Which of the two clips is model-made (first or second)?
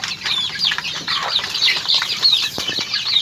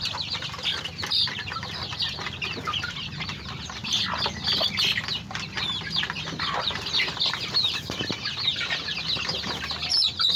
first